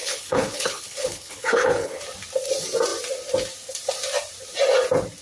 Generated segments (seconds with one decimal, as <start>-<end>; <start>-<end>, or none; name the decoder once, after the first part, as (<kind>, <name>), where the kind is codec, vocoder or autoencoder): 0.0-2.0 (codec, HILCodec)